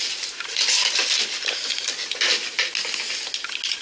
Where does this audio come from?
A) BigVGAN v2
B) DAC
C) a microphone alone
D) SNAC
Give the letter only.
C